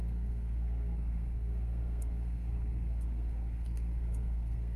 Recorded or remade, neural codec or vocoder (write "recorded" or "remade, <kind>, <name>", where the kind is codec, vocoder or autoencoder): remade, codec, SNAC